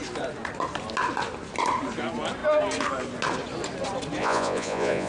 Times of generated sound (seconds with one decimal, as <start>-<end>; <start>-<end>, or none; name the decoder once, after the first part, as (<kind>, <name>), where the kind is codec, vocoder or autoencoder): 4.2-5.1 (vocoder, Vocos)